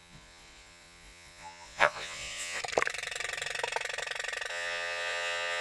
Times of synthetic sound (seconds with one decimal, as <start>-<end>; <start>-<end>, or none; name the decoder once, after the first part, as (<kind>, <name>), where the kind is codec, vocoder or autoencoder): 0.0-2.6 (vocoder, Vocos); 4.5-5.6